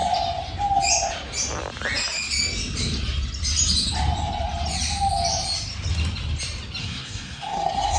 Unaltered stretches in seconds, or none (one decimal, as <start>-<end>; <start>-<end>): 0.0-6.8